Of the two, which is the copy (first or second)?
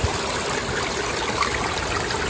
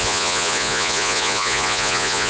second